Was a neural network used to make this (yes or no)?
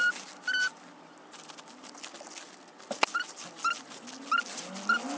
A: no